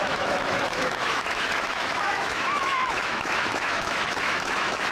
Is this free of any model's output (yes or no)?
no